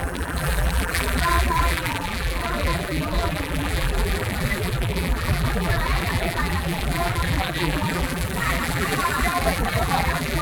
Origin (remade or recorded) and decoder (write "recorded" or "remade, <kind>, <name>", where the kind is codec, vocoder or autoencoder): remade, vocoder, BigVGAN v2